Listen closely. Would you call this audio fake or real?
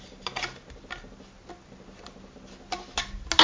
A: real